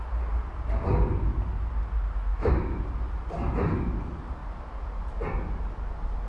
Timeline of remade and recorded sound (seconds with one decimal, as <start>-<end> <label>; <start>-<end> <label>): 0.0-2.3 recorded; 2.3-2.8 remade; 2.8-6.3 recorded